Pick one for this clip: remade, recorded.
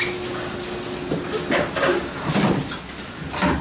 recorded